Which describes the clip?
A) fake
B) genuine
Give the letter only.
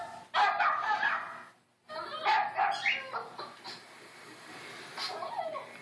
B